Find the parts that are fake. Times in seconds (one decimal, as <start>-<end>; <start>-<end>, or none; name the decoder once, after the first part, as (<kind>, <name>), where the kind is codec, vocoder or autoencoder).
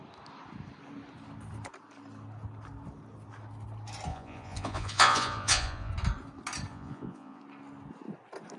4.1-5.9 (vocoder, Vocos); 6.7-7.4